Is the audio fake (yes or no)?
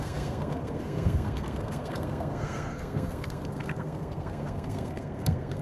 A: yes